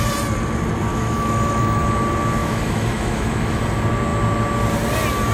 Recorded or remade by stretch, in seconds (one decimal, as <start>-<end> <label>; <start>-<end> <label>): 0.0-0.9 recorded; 0.9-1.8 remade; 1.8-2.4 recorded; 2.4-3.6 remade; 3.6-5.3 recorded